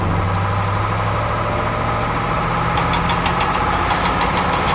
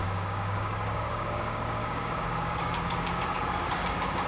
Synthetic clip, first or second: second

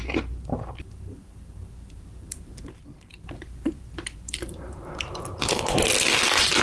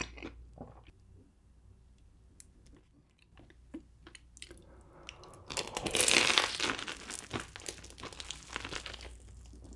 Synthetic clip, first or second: first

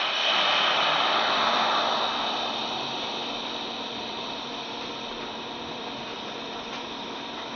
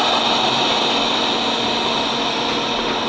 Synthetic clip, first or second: first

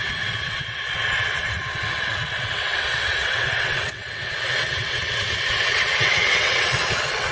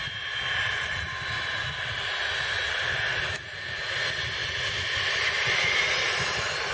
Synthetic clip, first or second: first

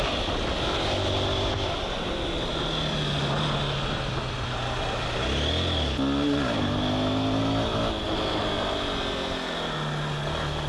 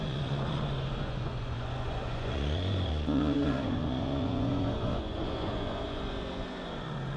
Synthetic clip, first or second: second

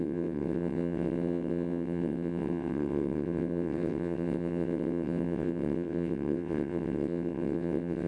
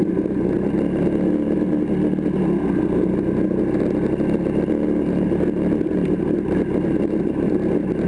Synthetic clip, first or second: first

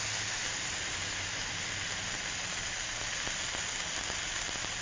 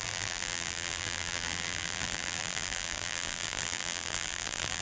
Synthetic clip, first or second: second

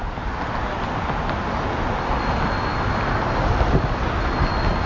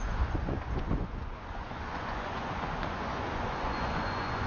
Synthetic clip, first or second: second